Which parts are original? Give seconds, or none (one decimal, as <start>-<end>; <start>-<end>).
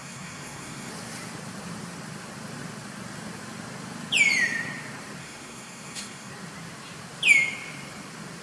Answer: 0.9-5.2; 6.3-8.4